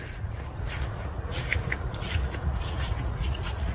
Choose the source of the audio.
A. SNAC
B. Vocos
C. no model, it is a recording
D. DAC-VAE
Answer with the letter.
B